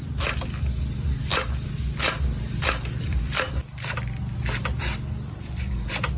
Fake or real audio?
real